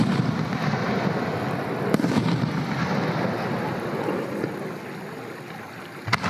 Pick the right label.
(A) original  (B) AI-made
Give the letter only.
A